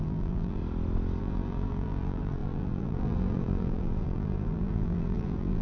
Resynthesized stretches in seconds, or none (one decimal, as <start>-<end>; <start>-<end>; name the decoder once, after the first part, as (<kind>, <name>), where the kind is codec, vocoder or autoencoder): 0.0-0.6 (vocoder, BigVGAN v2); 1.2-5.6